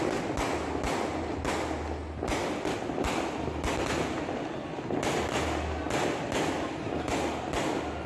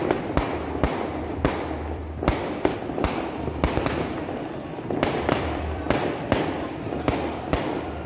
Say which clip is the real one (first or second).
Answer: first